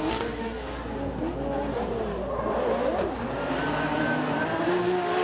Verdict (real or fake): real